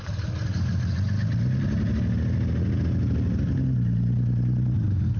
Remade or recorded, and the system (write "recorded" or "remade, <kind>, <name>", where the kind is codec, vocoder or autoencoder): recorded